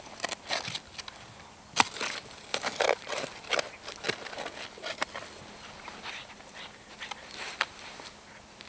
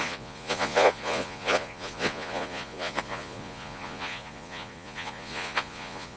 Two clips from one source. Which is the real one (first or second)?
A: first